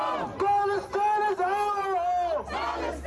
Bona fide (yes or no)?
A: yes